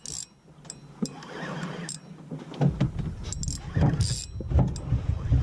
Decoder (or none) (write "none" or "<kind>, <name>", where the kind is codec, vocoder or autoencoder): none